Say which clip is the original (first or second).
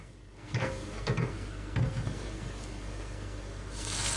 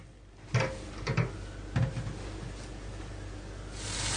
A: second